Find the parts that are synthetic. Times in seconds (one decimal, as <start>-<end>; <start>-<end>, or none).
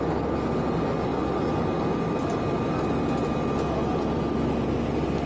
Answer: none